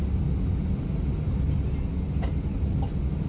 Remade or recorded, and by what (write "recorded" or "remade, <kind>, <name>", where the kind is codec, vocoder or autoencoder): recorded